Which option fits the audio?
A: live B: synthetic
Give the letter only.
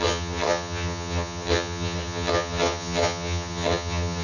B